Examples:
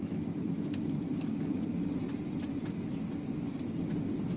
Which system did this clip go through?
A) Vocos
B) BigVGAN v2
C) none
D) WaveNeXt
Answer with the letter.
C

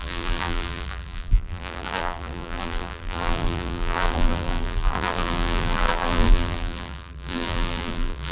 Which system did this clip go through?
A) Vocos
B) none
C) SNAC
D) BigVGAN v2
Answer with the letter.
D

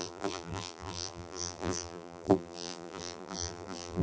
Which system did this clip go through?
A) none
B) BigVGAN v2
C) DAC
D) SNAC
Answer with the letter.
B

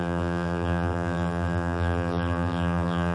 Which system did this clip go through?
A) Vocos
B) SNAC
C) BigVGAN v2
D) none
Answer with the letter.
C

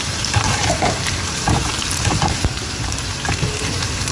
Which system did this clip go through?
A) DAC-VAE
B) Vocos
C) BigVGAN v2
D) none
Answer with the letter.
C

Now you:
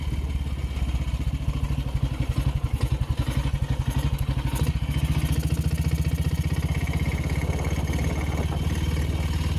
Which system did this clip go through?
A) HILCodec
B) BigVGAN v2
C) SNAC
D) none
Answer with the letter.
D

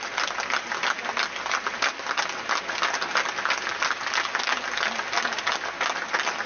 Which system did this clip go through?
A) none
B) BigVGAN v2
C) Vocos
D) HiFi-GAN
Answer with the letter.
A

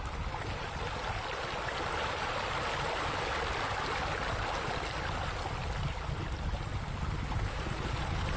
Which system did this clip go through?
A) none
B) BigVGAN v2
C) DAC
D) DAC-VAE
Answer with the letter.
A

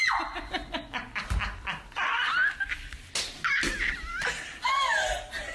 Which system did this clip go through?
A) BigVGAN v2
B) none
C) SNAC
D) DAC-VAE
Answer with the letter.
B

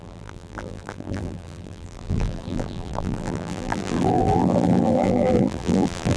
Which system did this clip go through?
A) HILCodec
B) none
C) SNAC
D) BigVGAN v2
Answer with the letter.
D